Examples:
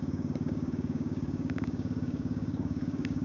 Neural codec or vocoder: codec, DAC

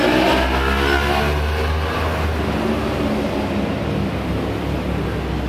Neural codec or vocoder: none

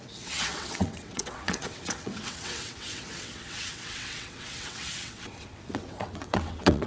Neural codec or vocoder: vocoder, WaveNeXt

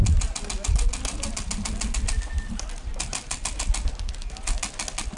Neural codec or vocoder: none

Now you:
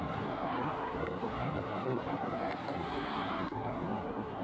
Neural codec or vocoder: codec, SNAC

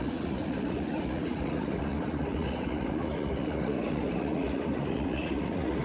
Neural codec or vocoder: vocoder, Vocos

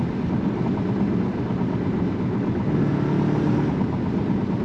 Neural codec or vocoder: none